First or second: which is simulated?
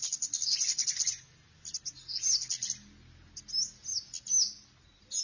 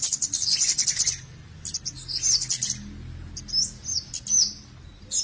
second